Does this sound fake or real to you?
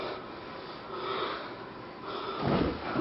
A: real